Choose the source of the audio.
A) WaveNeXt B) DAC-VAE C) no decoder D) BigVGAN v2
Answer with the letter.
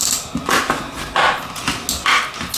C